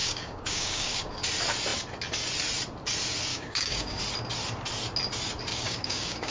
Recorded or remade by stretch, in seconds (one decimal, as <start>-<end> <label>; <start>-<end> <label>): 0.0-1.1 remade; 1.1-3.3 recorded; 3.3-4.0 remade; 4.0-5.5 recorded; 5.5-6.3 remade